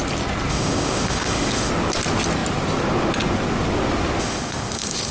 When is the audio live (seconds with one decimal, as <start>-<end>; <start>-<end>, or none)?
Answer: 0.0-0.5; 1.7-4.2